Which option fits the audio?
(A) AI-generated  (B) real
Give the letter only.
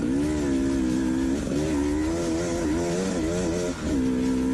B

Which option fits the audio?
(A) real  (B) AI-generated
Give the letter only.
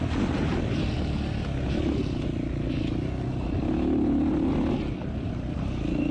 A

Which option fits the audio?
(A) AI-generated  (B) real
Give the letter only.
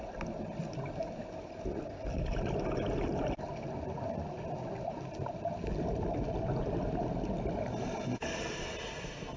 B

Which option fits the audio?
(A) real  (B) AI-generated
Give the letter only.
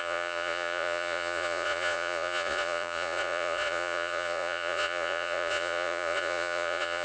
B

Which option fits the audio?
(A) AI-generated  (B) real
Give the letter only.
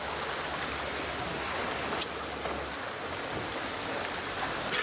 B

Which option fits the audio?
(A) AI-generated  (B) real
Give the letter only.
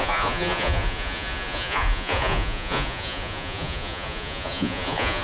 A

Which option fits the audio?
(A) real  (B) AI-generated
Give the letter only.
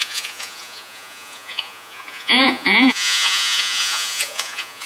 B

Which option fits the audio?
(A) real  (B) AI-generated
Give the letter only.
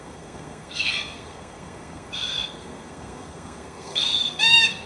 B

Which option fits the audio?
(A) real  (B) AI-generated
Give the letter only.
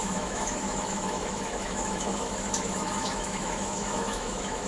B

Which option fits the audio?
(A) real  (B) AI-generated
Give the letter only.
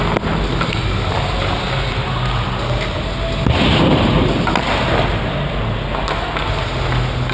A